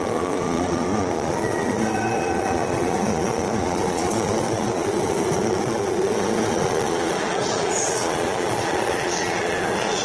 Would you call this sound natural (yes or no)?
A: no